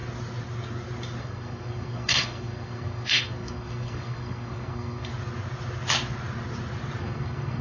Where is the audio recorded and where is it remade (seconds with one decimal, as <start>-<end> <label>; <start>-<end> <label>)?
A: 0.0-1.2 recorded; 1.2-5.1 remade; 5.1-7.0 recorded; 7.0-7.6 remade